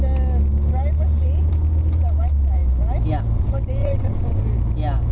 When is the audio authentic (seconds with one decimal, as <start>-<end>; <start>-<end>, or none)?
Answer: 0.0-3.8; 4.4-5.1